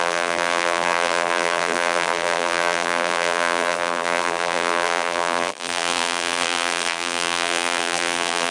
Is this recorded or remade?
remade